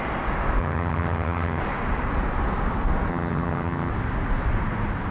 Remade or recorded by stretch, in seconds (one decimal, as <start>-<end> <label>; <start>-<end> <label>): 0.0-0.6 recorded; 0.6-1.6 remade; 1.6-3.1 recorded; 3.1-3.9 remade; 3.9-5.1 recorded